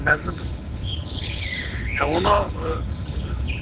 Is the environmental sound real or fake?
fake